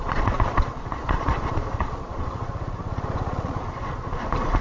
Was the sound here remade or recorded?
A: remade